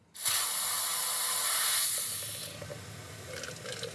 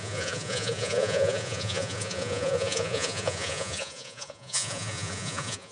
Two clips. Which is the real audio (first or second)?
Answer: first